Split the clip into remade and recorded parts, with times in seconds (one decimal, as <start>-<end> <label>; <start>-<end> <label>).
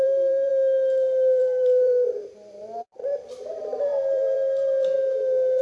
0.0-0.5 remade; 0.5-1.4 recorded; 1.4-5.6 remade